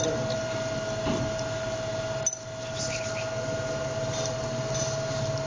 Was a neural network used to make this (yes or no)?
no